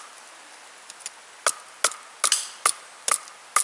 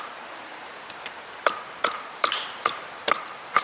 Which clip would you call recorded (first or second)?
first